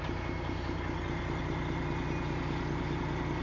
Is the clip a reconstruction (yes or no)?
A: no